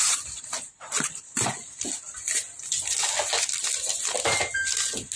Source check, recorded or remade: recorded